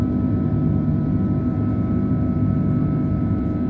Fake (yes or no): no